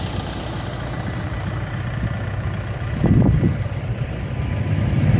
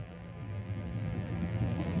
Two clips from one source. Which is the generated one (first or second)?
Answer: second